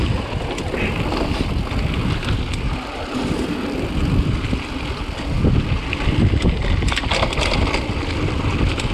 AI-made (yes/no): no